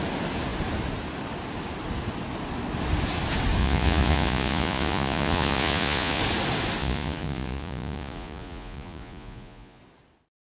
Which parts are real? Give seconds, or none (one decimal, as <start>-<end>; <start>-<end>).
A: 0.0-3.6; 6.2-6.8; 9.8-10.5